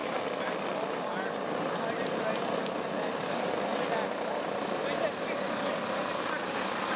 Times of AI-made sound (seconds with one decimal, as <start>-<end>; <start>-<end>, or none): 0.0-0.5; 3.7-5.3

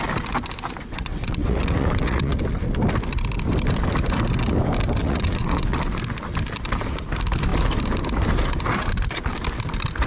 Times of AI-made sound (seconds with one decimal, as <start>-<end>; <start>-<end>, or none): 0.8-2.4; 5.0-5.8

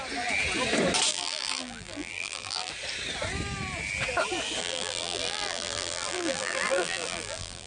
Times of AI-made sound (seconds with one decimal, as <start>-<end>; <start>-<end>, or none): 1.1-2.7; 4.6-7.7